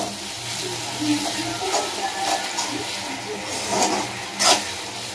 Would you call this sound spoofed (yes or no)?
no